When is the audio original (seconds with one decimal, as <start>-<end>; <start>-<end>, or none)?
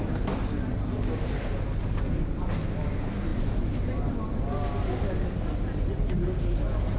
0.0-7.0